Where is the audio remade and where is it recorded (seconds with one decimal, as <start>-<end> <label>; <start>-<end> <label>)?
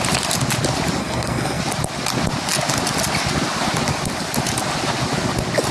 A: 0.0-1.0 recorded; 1.0-1.6 remade; 1.6-5.7 recorded